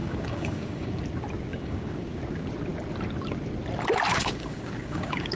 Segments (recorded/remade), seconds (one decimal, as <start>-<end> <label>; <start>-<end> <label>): 0.0-1.0 remade; 1.0-1.5 recorded; 1.5-2.2 remade; 2.2-4.1 recorded; 4.1-5.4 remade